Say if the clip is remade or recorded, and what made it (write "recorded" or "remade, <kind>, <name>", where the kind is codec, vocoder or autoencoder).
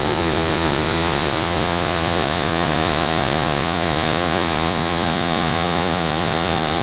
remade, vocoder, Vocos